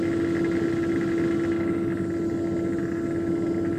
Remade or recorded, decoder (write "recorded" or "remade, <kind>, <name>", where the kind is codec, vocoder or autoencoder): recorded